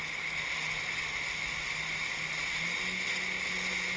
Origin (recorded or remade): recorded